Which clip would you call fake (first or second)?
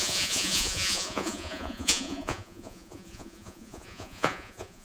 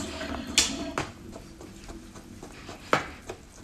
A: first